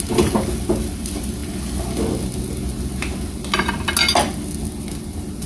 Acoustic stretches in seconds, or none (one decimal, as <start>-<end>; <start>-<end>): 0.0-5.5